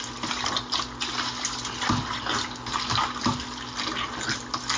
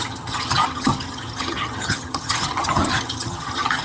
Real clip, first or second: first